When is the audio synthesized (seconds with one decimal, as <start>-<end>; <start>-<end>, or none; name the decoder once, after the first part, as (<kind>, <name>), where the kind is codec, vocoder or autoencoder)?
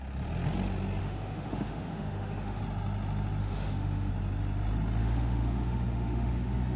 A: 1.0-2.6 (autoencoder, DAC-VAE); 3.4-4.1; 5.0-6.8